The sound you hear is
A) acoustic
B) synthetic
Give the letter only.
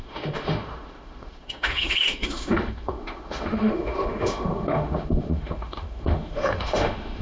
B